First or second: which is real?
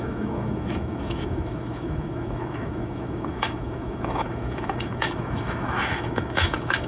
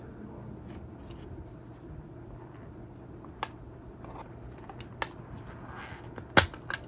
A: second